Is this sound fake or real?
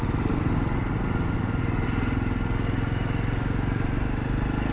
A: real